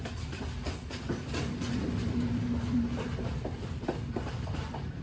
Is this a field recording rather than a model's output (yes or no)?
no